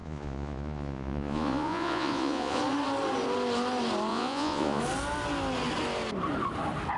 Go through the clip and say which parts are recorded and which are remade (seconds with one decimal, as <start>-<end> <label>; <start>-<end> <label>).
0.0-2.6 remade; 2.6-4.1 recorded; 4.1-4.8 remade; 4.8-7.0 recorded

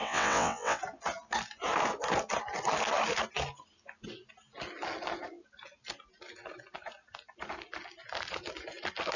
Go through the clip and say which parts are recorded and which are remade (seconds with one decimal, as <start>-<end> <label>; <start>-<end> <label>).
0.0-0.8 remade; 0.8-9.2 recorded